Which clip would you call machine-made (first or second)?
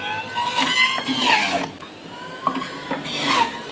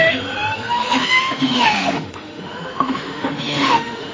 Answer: second